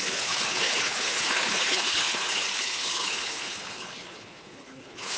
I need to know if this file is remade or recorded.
remade